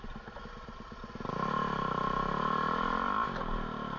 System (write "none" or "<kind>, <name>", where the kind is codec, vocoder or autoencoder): none